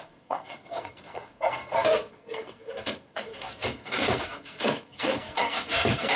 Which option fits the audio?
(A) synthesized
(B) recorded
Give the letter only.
A